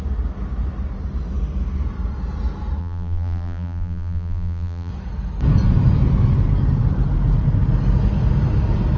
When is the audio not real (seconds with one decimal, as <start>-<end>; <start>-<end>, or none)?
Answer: 2.8-4.9